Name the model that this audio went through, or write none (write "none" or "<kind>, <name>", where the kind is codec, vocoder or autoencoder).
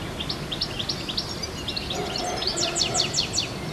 none